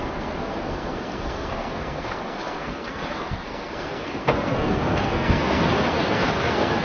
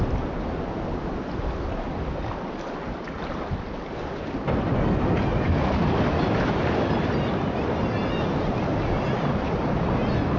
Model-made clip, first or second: first